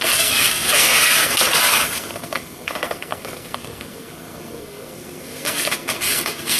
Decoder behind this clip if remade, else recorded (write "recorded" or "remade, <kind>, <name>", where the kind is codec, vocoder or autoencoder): remade, codec, SNAC